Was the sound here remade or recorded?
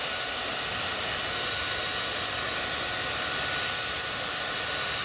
recorded